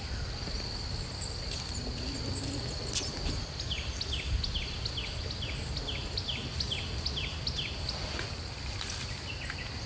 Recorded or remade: recorded